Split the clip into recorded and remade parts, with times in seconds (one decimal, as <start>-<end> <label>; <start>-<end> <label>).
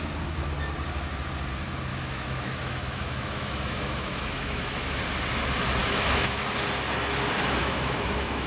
0.0-1.9 recorded; 1.9-5.0 remade; 5.0-5.8 recorded; 5.8-6.4 remade; 6.4-7.6 recorded; 7.6-8.5 remade